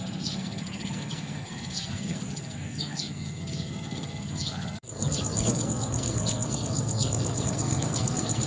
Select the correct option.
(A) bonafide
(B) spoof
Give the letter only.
B